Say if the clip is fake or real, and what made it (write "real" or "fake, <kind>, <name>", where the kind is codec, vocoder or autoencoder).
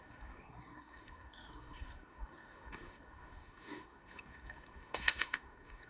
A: fake, codec, SNAC